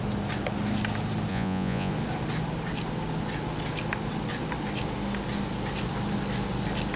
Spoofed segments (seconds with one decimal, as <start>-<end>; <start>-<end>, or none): 1.3-1.9